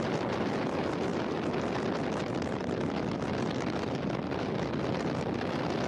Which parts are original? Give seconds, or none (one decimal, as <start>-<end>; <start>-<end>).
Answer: 0.0-5.9